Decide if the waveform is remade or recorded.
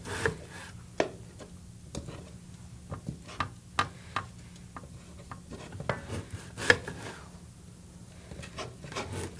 recorded